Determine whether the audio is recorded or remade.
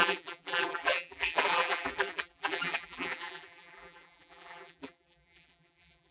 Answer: remade